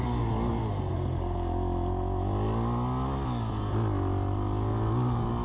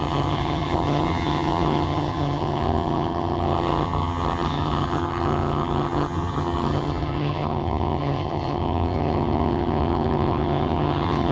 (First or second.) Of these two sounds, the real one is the first